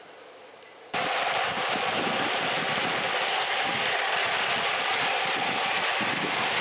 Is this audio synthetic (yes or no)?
no